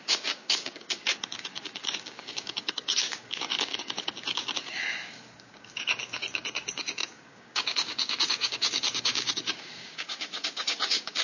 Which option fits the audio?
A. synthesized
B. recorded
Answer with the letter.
A